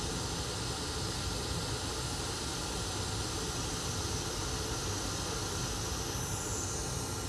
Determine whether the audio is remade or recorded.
recorded